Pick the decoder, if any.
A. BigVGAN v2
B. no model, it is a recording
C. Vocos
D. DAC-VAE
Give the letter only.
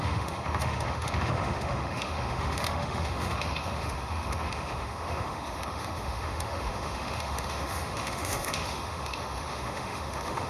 D